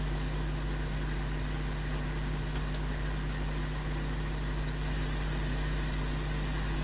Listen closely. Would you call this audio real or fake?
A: real